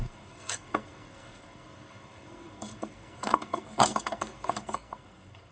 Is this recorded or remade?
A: remade